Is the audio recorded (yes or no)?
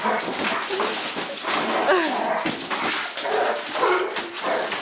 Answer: yes